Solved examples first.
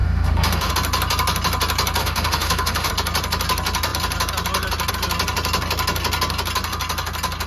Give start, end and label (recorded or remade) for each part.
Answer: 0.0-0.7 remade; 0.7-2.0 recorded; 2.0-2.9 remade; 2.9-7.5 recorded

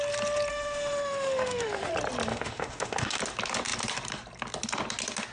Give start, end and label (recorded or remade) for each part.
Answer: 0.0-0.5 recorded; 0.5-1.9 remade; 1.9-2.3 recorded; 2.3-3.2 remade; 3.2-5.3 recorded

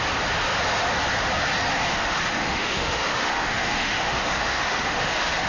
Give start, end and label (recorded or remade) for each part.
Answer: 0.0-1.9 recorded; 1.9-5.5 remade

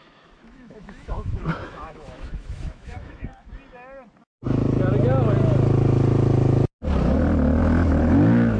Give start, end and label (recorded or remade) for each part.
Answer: 0.0-3.5 remade; 3.5-7.6 recorded; 7.6-8.6 remade